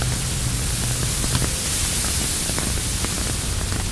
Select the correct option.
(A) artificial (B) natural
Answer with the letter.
B